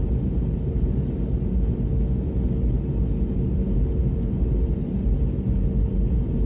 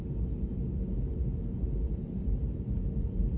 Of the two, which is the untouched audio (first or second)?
first